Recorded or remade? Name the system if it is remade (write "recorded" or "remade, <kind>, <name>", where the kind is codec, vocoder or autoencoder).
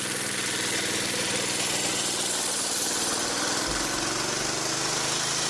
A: recorded